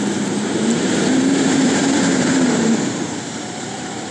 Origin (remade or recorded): remade